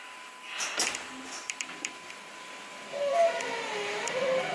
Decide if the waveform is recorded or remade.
recorded